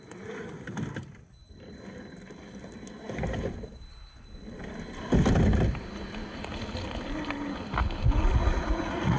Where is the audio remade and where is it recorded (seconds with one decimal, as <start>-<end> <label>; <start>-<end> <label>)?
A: 0.0-8.4 recorded; 8.4-9.2 remade